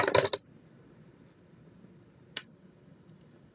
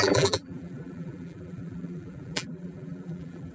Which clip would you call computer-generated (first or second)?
second